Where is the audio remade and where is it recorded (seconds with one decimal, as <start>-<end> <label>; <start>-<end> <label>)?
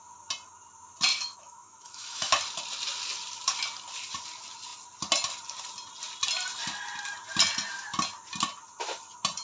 0.0-1.1 recorded; 1.1-2.3 remade; 2.3-9.4 recorded